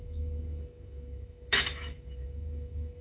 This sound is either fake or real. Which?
fake